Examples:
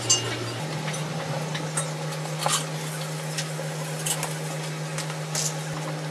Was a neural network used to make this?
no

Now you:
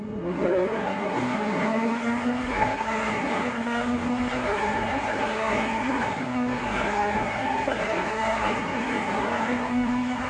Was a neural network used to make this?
yes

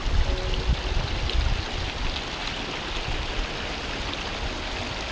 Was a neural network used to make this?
no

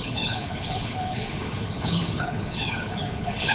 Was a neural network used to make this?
yes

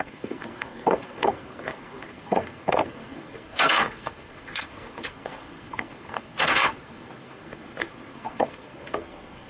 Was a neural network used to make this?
yes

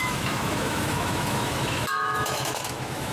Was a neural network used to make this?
yes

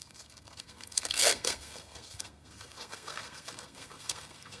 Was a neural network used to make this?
yes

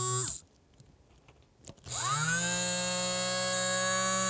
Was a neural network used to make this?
no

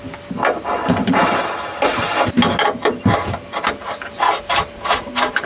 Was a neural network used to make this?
no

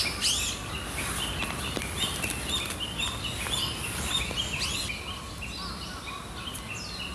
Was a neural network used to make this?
no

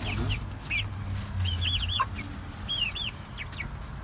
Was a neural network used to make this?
no